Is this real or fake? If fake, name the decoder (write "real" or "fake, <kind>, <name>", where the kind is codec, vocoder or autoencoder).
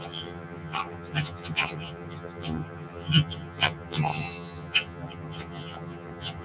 fake, vocoder, HiFi-GAN